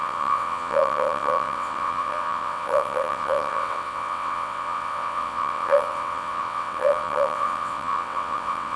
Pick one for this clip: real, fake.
fake